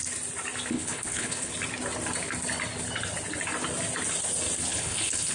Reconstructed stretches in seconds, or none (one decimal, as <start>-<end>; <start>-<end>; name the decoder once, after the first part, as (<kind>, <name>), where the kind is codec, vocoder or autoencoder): 0.7-1.5 (codec, HILCodec); 4.7-5.3